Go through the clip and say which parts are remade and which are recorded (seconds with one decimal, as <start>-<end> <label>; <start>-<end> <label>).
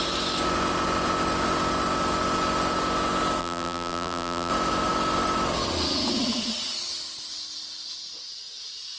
0.0-3.4 recorded; 3.4-4.5 remade; 4.5-9.0 recorded